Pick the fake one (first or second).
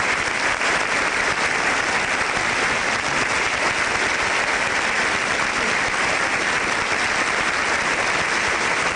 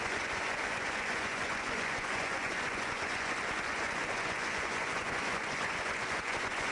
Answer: second